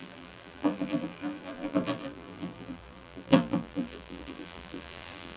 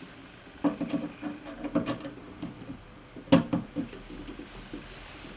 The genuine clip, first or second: second